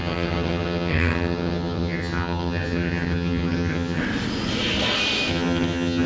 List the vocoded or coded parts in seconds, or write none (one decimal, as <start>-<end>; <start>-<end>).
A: 0.0-4.0; 5.3-6.1